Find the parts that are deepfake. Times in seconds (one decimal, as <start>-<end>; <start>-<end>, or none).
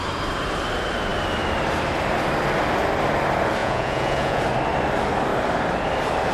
3.6-4.4